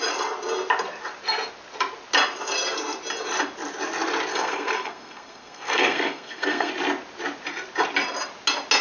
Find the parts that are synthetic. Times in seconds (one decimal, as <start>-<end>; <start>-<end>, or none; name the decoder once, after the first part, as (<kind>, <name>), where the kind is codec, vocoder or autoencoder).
4.3-6.7 (codec, SNAC)